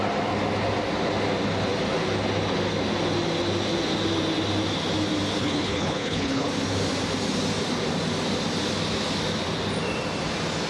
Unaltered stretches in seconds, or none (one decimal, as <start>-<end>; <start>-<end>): 0.0-5.4; 6.5-10.7